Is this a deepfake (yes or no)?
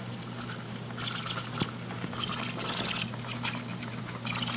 no